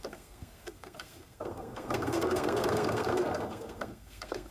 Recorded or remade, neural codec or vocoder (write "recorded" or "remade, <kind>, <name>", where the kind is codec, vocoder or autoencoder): remade, codec, SNAC